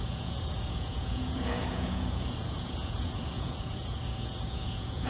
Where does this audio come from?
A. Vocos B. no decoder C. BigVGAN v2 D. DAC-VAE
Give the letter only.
A